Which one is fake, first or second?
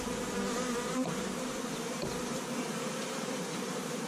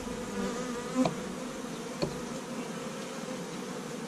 first